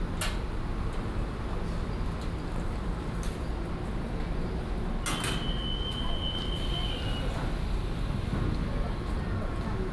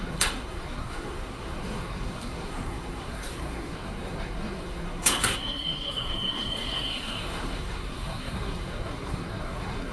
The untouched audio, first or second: first